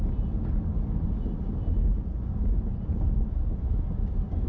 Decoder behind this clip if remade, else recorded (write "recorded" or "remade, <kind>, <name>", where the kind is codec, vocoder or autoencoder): recorded